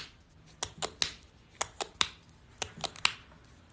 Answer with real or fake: real